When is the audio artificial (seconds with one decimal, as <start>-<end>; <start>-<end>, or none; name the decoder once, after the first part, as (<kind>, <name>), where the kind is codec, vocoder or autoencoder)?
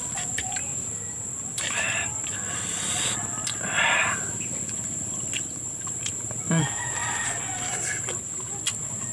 0.0-0.7 (vocoder, BigVGAN v2); 3.3-7.0; 7.8-9.1